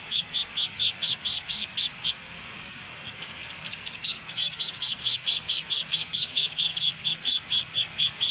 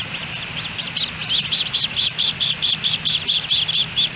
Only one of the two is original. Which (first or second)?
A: second